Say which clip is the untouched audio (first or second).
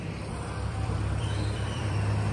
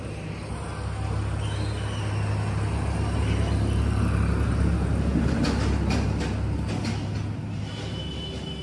second